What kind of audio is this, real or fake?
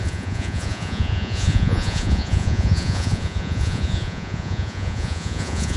fake